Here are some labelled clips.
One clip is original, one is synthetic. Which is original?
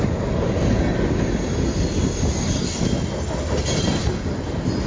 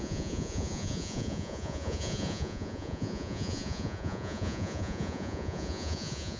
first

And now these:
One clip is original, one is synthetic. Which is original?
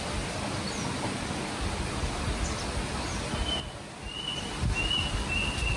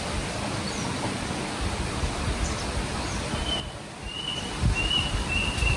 first